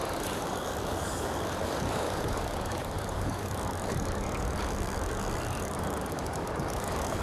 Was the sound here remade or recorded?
remade